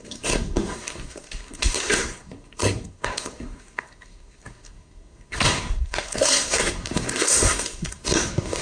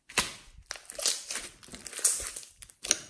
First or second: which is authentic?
second